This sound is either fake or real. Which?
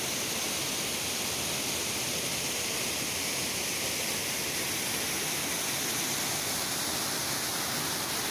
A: real